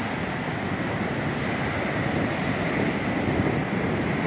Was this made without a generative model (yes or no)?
yes